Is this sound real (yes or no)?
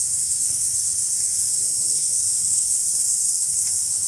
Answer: no